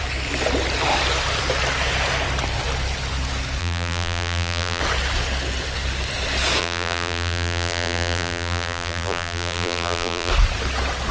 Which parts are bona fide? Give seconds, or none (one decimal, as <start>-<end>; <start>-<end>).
0.0-3.6; 4.8-6.6; 10.3-11.1